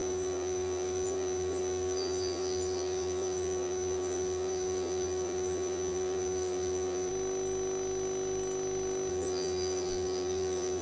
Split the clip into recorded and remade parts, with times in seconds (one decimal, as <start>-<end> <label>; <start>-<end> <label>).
0.0-7.1 remade; 7.1-9.1 recorded; 9.1-10.8 remade